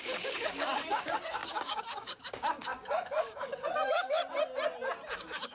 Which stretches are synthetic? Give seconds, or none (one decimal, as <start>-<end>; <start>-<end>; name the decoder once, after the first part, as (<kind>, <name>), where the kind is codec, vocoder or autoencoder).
0.0-4.2 (codec, DAC); 5.1-5.5